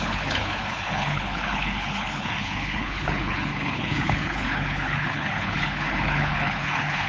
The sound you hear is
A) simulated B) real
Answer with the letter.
A